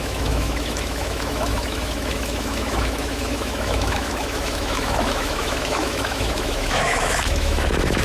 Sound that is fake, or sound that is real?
fake